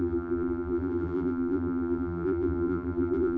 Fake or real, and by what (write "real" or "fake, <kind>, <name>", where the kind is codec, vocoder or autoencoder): fake, vocoder, BigVGAN v2